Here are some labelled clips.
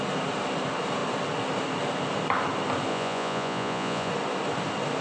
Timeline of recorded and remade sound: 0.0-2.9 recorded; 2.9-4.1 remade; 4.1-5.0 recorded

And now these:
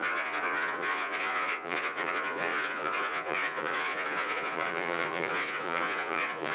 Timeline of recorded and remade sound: 0.0-6.5 remade

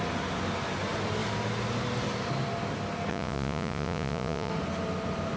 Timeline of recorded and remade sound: 0.0-3.1 recorded; 3.1-4.5 remade; 4.5-5.4 recorded